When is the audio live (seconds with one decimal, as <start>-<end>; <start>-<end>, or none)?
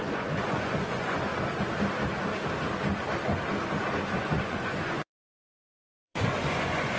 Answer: 1.3-4.2